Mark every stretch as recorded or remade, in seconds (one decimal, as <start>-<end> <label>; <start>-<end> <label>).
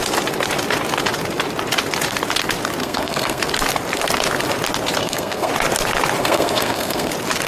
0.0-2.8 recorded; 2.8-3.4 remade; 3.4-5.0 recorded; 5.0-5.5 remade; 5.5-6.2 recorded; 6.2-7.1 remade; 7.1-7.5 recorded